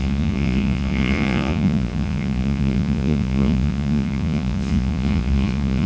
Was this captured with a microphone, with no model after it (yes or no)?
no